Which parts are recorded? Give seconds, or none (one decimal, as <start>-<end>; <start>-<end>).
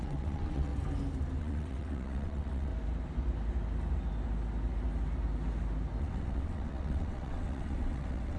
0.7-1.4; 2.7-6.0